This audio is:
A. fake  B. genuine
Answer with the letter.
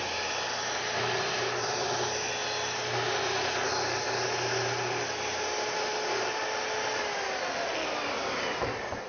B